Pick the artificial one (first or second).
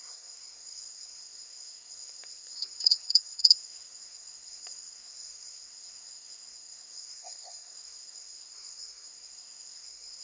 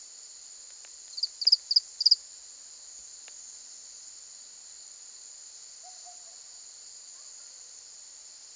first